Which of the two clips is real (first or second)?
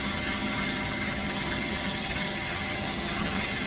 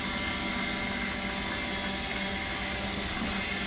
second